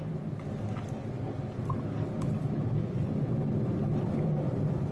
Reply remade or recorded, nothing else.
remade